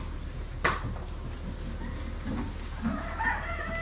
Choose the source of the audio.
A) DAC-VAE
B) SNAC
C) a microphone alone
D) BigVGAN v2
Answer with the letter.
C